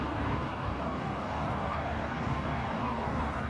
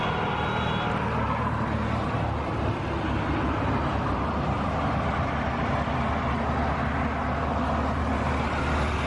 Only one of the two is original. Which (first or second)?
second